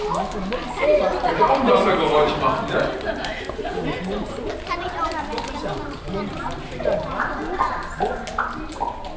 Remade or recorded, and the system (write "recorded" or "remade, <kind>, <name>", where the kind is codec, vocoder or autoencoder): recorded